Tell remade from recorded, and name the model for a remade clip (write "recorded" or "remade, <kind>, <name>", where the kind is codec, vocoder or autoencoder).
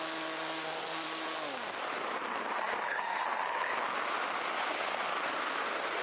recorded